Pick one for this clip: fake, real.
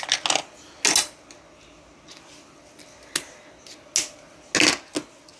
real